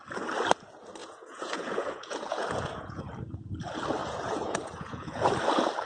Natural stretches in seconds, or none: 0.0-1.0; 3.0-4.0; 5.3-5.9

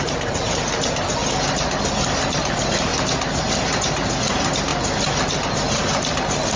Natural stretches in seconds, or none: 1.2-1.9; 2.9-4.2; 4.7-5.2

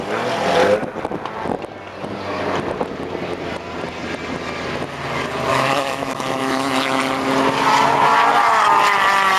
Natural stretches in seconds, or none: 0.0-5.5; 7.0-9.4

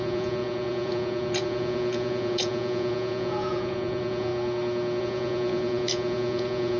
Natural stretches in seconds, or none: 4.3-5.0

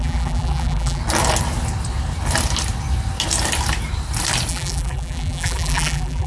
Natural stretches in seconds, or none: 1.0-4.5

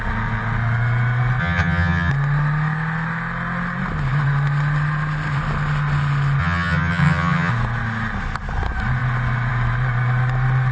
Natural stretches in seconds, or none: 0.0-1.4; 2.1-6.4; 7.5-10.7